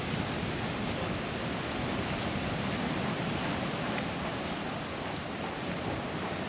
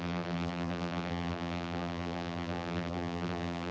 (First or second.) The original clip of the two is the first